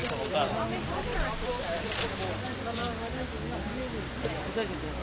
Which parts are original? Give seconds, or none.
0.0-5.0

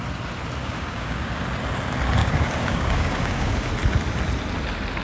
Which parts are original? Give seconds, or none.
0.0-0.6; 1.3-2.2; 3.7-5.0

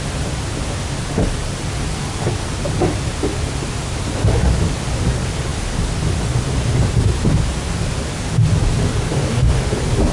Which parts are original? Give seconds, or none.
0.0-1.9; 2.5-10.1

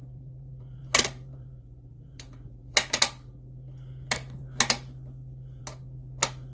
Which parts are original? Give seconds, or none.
3.0-6.5

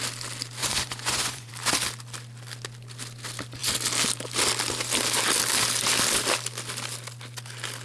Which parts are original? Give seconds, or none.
0.0-0.6; 1.5-7.8

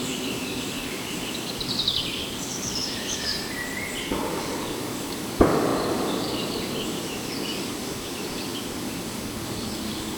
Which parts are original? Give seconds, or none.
3.3-4.0

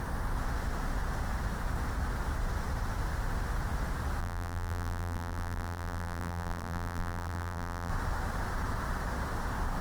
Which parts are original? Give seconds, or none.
0.0-4.2; 7.9-9.8

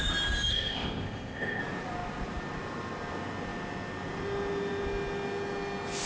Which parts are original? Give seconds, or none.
0.0-0.5; 1.6-6.1